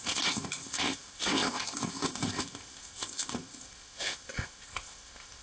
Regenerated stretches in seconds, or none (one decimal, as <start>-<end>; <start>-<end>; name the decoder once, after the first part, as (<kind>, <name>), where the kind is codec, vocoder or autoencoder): 0.0-5.4 (codec, ZipCodec)